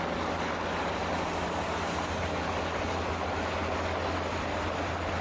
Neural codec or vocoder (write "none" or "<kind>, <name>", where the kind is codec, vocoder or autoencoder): none